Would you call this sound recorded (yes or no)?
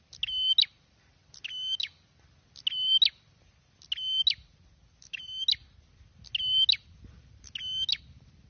yes